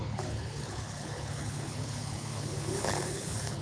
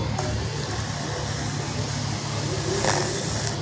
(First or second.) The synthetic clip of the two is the first